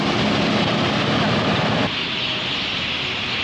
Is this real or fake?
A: real